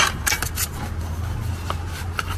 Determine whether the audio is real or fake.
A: real